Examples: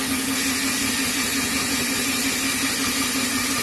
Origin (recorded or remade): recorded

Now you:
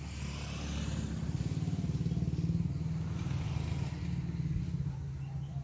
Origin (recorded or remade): recorded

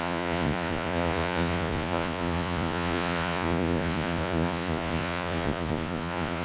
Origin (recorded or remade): remade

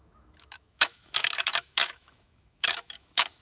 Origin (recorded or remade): remade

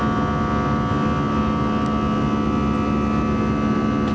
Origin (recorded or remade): recorded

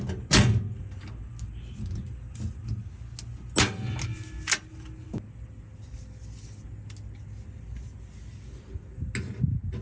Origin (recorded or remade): recorded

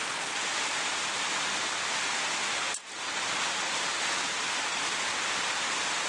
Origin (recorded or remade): recorded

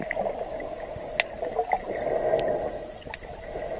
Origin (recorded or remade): recorded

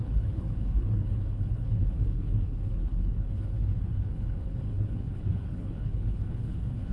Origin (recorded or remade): remade